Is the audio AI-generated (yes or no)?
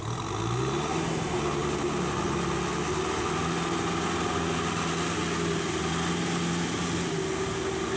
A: no